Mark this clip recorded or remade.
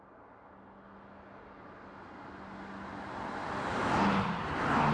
recorded